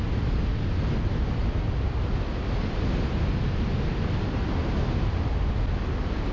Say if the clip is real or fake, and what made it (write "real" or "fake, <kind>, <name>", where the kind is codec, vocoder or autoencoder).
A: real